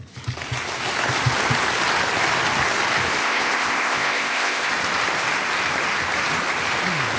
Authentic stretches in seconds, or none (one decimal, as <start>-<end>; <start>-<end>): 0.0-3.2; 4.7-7.2